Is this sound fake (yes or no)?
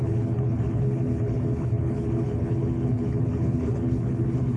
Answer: yes